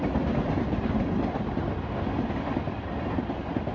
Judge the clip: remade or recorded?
recorded